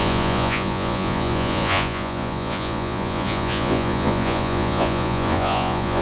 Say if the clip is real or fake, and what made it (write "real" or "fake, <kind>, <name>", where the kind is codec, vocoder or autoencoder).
fake, vocoder, Vocos